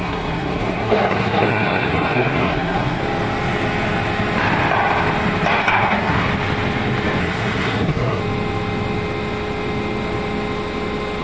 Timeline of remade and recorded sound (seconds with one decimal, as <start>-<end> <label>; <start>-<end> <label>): 0.0-3.0 remade; 3.0-5.6 recorded; 5.6-6.3 remade; 6.3-7.2 recorded; 7.2-8.2 remade; 8.2-11.2 recorded